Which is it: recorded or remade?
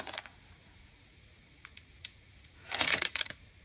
remade